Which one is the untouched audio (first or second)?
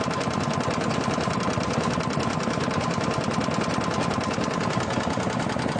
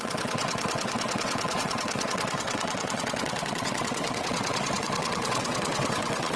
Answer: first